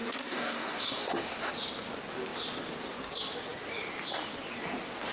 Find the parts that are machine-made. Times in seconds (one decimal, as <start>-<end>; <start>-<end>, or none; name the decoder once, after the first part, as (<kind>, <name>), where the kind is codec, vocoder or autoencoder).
0.0-1.5 (codec, SNAC)